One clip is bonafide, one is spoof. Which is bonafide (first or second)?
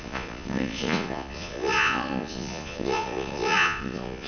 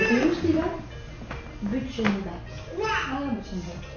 second